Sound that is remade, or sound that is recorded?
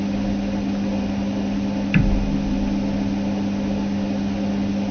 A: recorded